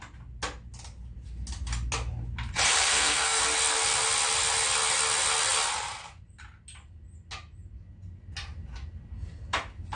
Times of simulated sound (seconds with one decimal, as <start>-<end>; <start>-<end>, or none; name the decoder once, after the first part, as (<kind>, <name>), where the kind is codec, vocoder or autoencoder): 2.9-3.4 (codec, SNAC)